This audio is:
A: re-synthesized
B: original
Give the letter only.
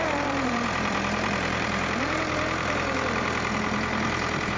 A